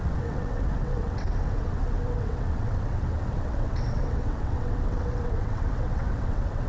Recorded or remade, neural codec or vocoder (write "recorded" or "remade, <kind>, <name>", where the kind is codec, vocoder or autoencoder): remade, vocoder, WaveNeXt